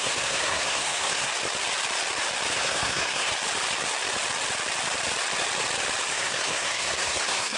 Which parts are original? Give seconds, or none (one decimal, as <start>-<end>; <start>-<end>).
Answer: 1.3-2.5; 3.3-6.1